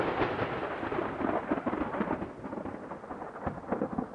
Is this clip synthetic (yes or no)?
no